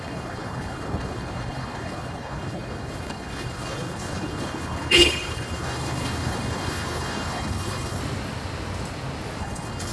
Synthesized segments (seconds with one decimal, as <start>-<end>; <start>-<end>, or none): 0.0-8.0; 9.4-9.9